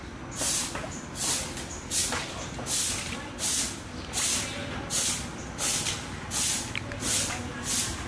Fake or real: real